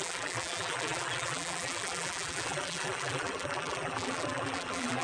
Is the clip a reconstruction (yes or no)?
yes